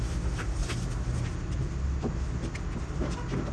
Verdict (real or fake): real